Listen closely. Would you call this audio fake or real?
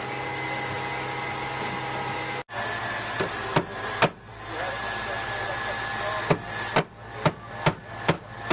real